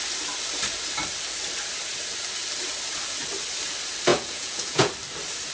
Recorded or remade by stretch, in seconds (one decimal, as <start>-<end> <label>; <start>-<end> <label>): 0.0-4.1 recorded; 4.1-4.9 remade; 4.9-5.5 recorded